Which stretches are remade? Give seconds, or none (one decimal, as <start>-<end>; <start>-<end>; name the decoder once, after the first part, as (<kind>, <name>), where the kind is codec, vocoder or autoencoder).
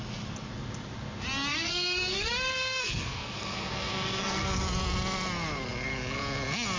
1.5-4.6 (codec, SNAC)